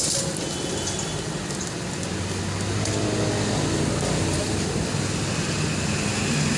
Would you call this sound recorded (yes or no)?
yes